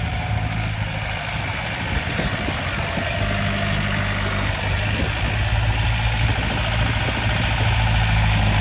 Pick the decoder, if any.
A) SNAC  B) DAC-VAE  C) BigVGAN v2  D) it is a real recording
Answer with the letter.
D